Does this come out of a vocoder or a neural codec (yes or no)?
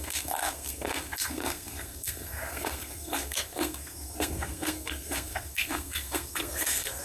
yes